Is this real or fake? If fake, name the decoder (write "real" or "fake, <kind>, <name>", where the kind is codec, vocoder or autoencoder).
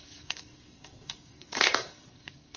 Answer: fake, codec, SNAC